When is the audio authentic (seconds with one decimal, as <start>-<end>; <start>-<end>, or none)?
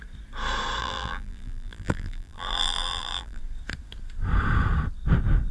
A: 0.0-0.8; 3.4-5.5